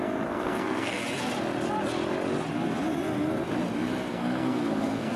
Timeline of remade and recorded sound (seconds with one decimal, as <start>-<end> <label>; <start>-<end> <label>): 0.0-1.0 remade; 1.0-4.1 recorded; 4.1-5.2 remade